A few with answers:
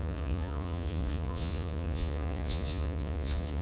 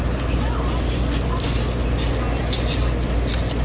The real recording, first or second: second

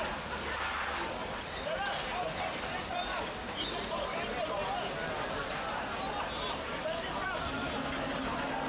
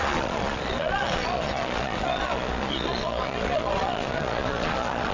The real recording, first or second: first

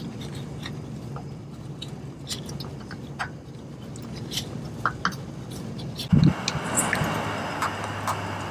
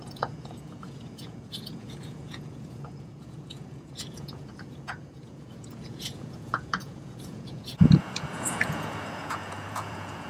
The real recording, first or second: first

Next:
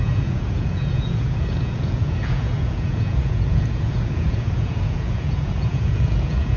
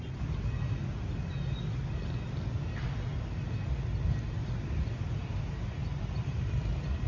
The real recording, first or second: second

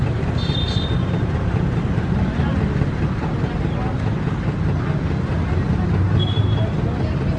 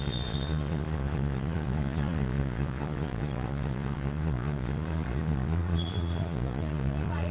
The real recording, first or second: first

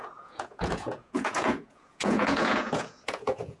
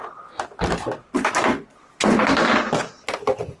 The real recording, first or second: second